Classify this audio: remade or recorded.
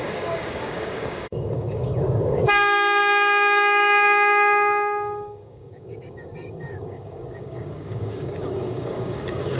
remade